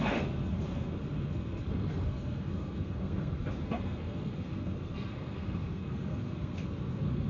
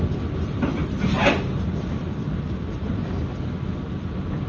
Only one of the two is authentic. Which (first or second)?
second